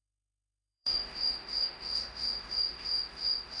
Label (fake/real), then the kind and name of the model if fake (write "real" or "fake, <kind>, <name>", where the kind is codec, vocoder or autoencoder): fake, autoencoder, DAC-VAE